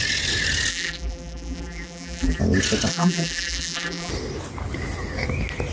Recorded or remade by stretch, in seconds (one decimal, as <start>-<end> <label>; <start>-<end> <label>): 0.0-0.7 recorded; 0.7-2.4 remade; 2.4-2.9 recorded; 2.9-4.1 remade; 4.1-5.7 recorded